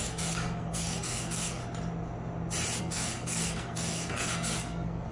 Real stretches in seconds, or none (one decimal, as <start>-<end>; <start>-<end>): 1.6-2.8